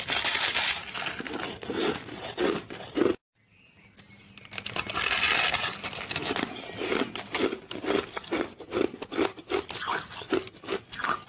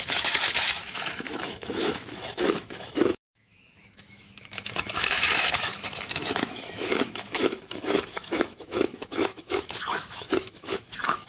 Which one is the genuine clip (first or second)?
first